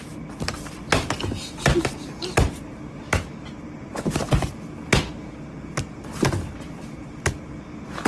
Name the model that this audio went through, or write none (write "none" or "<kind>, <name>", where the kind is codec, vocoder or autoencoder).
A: none